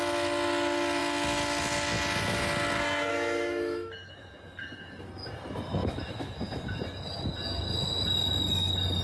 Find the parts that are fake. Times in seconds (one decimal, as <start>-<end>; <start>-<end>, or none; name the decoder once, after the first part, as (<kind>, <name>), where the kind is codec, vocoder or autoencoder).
3.1-5.1 (autoencoder, DAC-VAE); 5.8-6.8